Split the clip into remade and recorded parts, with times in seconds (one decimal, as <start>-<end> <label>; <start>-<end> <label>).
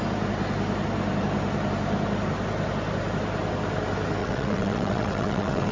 0.0-4.2 recorded; 4.2-5.7 remade